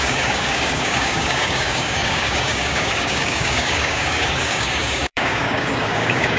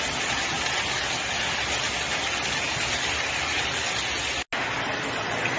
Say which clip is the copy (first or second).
first